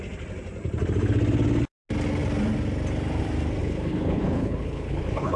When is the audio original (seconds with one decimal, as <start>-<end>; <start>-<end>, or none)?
0.0-3.6